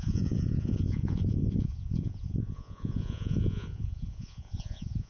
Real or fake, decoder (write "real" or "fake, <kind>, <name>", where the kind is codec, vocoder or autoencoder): fake, vocoder, Vocos